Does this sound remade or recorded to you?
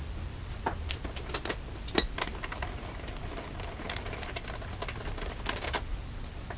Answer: recorded